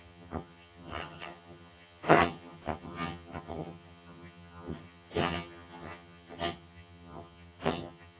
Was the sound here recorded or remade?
remade